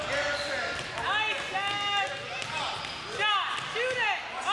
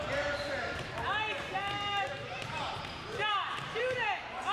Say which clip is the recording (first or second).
first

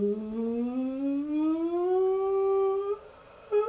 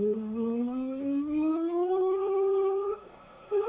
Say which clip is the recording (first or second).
first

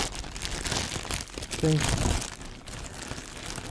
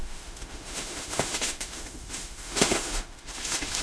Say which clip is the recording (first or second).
first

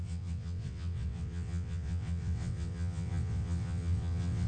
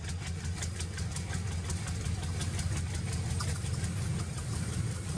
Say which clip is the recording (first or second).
second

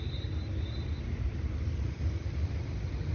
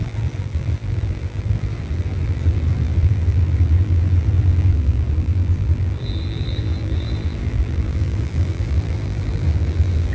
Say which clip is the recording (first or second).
first